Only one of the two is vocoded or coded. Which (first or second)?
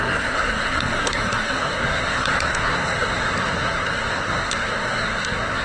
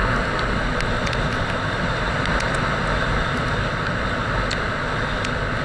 first